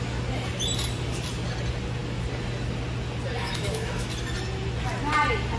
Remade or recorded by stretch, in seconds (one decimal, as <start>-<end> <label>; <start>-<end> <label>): 0.0-3.4 recorded; 3.4-4.1 remade; 4.1-5.6 recorded